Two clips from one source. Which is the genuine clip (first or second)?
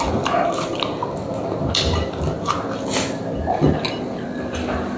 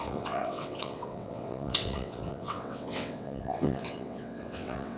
first